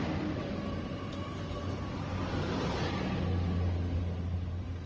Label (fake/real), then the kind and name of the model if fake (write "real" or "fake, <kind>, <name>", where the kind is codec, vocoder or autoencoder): real